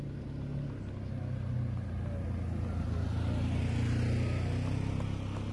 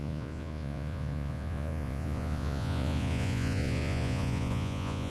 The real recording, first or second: first